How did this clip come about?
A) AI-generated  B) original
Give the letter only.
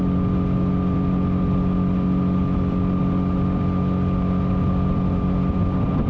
B